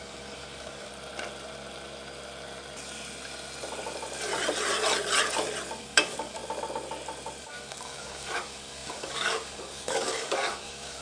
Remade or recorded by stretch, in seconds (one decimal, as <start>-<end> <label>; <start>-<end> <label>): 0.0-0.9 remade; 0.9-5.8 recorded; 5.8-6.4 remade; 6.4-7.4 recorded; 7.4-11.0 remade